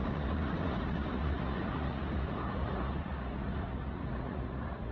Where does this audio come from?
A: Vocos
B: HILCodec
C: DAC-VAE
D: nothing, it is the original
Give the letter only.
A